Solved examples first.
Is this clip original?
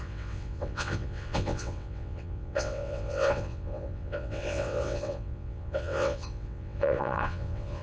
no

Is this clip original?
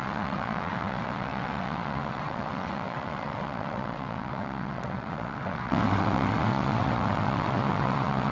no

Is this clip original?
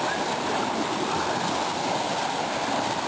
yes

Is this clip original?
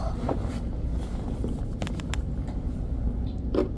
yes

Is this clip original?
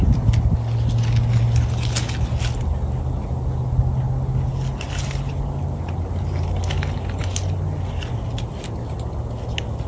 yes